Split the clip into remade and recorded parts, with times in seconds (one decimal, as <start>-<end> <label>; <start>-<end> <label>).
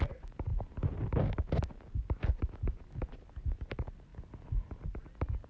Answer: 0.0-5.5 recorded